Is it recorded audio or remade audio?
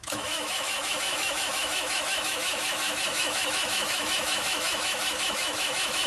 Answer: remade